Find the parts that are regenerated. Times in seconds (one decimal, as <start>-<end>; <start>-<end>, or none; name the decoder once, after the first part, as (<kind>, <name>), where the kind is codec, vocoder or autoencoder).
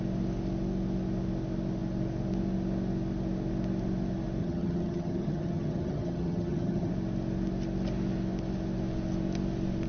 4.4-6.9 (vocoder, HiFi-GAN)